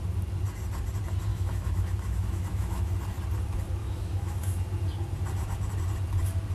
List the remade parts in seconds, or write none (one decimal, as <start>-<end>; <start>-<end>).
1.3-2.9; 3.8-4.4